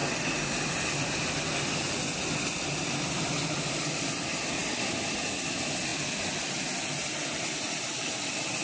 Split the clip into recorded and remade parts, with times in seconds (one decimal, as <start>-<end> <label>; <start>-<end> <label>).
0.0-8.6 recorded